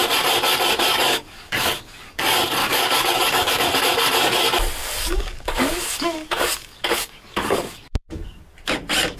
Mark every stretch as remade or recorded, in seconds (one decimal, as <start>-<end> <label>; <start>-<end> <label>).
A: 0.0-0.9 recorded; 0.9-2.2 remade; 2.2-2.6 recorded; 2.6-3.8 remade; 3.8-4.8 recorded; 4.8-8.4 remade; 8.4-9.2 recorded